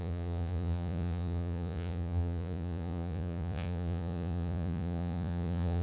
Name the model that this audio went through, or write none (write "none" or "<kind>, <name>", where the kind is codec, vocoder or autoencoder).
vocoder, Vocos